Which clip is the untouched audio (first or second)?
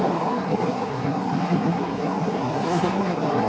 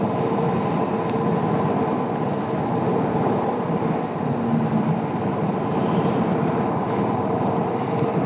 second